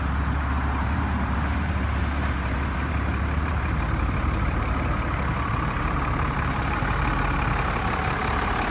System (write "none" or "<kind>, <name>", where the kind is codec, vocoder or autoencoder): vocoder, BigVGAN v2